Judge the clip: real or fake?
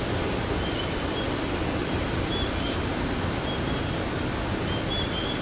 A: real